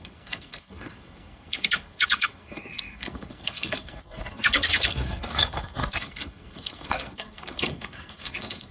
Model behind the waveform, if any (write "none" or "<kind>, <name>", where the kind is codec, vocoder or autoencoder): codec, SNAC